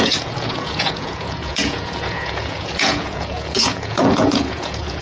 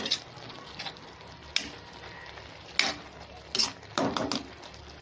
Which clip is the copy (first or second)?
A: first